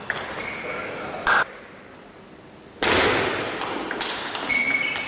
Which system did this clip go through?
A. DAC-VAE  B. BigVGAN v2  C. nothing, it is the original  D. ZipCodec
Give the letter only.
C